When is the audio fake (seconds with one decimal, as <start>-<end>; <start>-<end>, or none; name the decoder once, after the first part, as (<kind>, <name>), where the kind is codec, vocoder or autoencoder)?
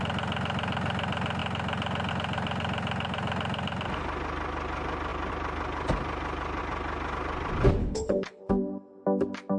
7.8-8.5 (codec, HILCodec)